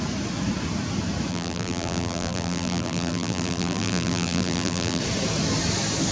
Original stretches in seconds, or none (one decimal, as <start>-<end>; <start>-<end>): 0.0-1.3; 5.0-6.1